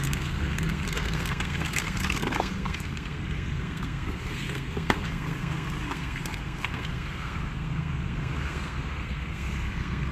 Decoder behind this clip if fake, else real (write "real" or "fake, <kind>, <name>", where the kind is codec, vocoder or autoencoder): fake, codec, SNAC